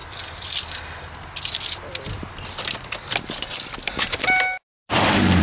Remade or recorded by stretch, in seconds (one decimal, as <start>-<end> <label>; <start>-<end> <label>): 0.0-5.4 recorded